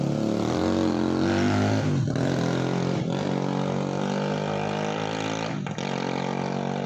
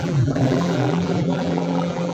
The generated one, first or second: second